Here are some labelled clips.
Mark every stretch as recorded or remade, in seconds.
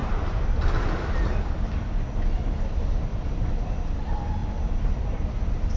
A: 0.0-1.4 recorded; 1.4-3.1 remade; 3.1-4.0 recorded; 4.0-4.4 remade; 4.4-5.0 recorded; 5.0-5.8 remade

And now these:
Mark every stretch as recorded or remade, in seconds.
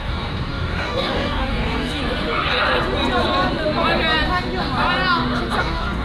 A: 0.0-2.0 remade; 2.0-5.6 recorded; 5.6-6.0 remade